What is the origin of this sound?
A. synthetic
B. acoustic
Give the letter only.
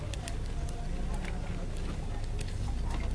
B